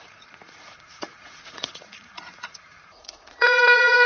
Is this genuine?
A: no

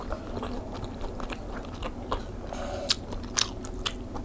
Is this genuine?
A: yes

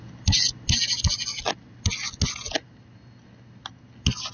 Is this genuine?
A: yes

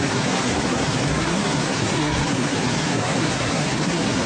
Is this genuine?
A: no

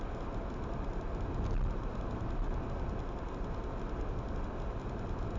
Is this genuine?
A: yes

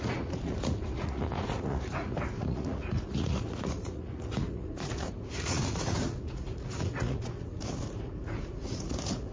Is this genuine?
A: no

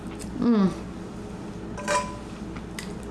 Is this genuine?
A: yes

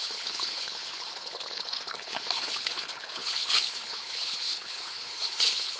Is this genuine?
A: no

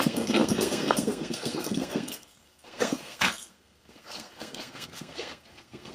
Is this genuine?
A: no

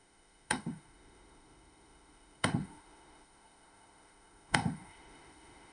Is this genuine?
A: no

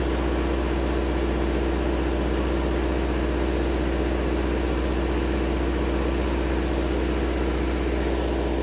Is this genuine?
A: yes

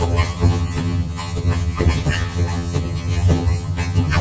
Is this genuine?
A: no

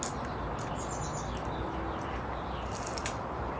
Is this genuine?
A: yes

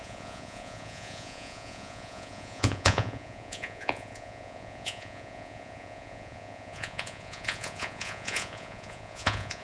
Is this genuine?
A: no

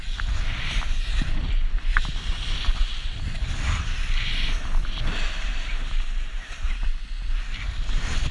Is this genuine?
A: yes